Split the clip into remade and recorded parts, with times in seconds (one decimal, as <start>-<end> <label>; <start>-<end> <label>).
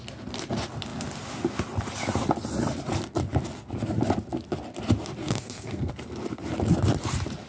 0.0-5.2 recorded; 5.2-5.9 remade; 5.9-7.5 recorded